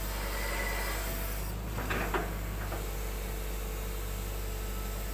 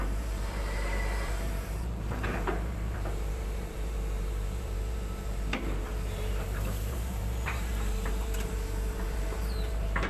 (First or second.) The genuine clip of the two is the first